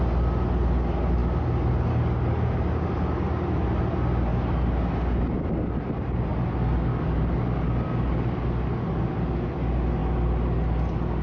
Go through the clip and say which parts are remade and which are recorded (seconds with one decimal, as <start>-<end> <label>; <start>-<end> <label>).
0.0-11.2 recorded